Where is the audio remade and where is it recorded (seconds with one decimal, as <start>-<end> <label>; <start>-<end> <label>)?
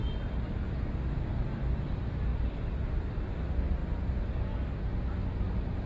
0.0-2.3 recorded; 2.3-3.3 remade; 3.3-5.9 recorded